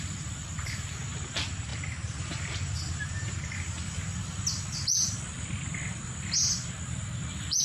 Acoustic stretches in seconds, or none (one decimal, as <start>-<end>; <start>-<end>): 0.0-1.7; 3.9-7.6